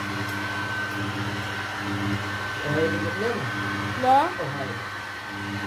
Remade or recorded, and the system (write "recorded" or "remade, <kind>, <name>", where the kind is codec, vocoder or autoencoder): recorded